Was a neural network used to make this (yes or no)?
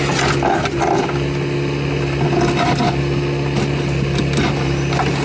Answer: no